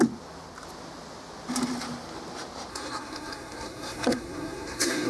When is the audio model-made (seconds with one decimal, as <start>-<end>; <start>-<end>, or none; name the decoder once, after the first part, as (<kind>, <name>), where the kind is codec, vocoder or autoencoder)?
2.7-5.1 (codec, SNAC)